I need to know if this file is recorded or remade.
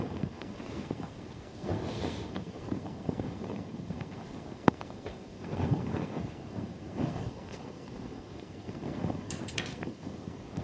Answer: remade